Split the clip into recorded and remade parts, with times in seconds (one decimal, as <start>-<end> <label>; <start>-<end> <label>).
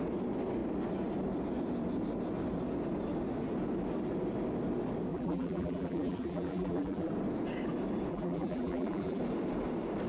0.0-5.1 recorded; 5.1-7.1 remade; 7.1-8.1 recorded; 8.1-9.2 remade; 9.2-10.1 recorded